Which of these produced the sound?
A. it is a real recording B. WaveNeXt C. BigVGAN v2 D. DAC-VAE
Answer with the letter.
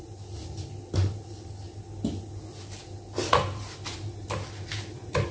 A